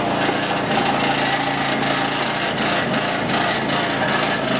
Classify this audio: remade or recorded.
recorded